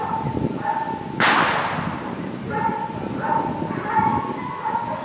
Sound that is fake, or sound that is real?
real